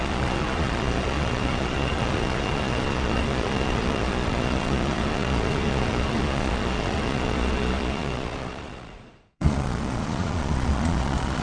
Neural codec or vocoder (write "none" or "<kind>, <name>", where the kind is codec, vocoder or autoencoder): vocoder, Vocos